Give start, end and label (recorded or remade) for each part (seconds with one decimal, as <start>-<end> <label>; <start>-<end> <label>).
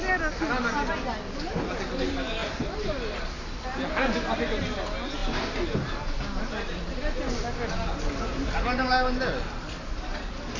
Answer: 0.0-10.6 recorded